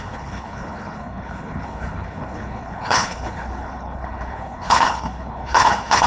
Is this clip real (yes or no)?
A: no